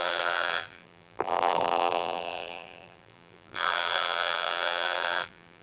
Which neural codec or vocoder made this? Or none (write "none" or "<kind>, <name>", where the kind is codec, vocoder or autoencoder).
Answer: vocoder, BigVGAN v2